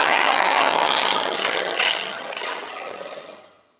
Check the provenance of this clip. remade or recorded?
remade